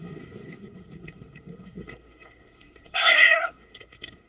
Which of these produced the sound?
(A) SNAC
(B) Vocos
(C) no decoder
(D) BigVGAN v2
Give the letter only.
A